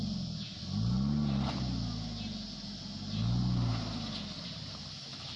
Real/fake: real